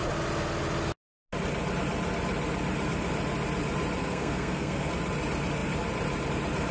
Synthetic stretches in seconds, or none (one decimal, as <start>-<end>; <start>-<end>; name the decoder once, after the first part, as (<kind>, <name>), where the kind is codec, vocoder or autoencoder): 4.0-4.9 (codec, SNAC)